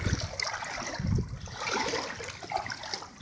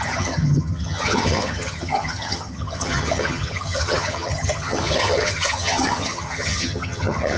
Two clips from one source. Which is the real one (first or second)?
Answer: first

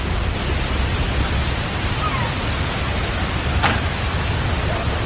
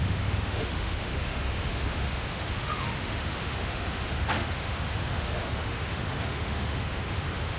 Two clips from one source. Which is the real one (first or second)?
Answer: first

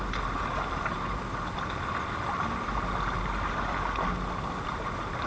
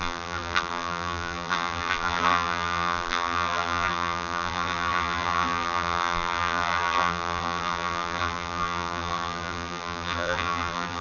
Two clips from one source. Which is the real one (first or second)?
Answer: first